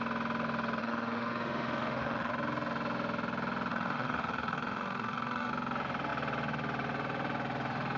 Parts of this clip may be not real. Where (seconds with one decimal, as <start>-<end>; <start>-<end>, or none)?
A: 0.8-2.3; 3.7-5.5